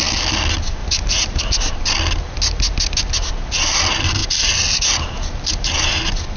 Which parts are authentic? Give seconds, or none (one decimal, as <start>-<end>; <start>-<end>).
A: 0.0-0.8; 1.4-3.2; 3.8-4.2; 5.9-6.4